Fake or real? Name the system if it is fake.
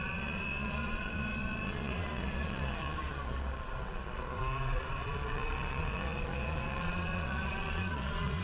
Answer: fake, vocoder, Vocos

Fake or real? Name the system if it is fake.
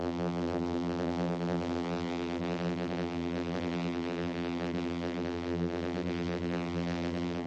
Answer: fake, vocoder, BigVGAN v2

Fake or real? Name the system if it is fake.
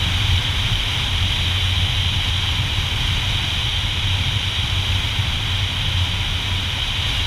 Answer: real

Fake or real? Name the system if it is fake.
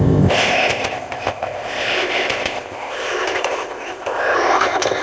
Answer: fake, codec, ZipCodec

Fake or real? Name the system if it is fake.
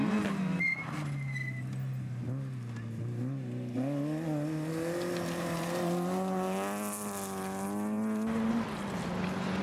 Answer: real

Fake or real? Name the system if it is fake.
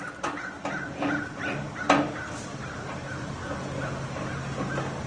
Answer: real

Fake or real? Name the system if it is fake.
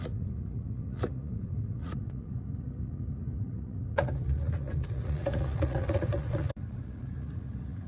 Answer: fake, vocoder, Vocos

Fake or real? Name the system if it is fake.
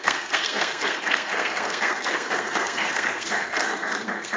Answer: fake, codec, SNAC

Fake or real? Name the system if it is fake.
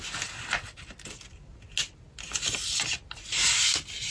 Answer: real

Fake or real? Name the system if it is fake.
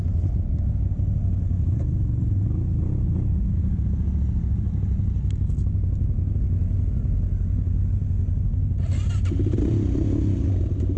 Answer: real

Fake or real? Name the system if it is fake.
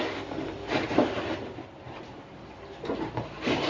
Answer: real